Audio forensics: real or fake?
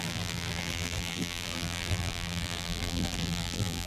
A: fake